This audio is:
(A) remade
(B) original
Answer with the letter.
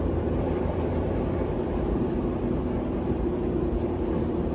A